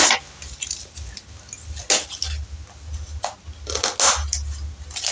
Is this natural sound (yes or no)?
yes